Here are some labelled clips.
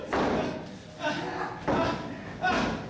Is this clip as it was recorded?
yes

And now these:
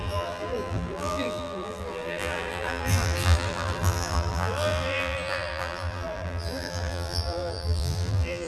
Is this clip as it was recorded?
no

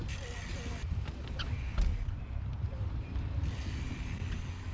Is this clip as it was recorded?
yes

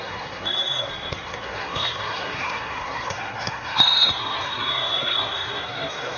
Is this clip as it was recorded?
no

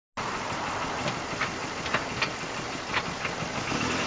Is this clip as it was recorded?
yes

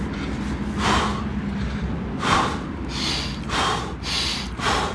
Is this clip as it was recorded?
yes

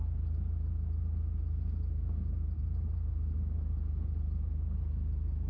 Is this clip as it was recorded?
yes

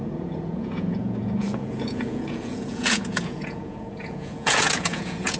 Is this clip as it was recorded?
no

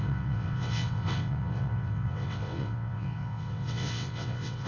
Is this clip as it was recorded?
no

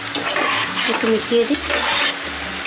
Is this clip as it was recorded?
yes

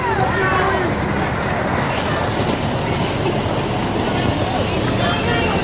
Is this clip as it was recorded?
yes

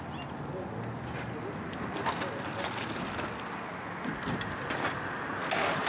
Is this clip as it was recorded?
yes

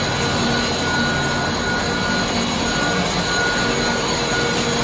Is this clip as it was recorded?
yes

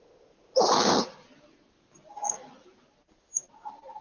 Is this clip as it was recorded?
yes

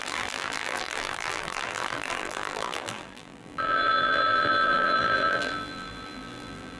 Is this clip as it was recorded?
no